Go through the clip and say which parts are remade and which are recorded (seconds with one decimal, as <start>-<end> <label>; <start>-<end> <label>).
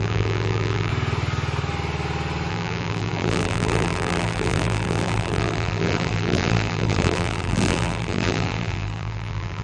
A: 0.0-0.9 remade; 0.9-2.5 recorded; 2.5-9.6 remade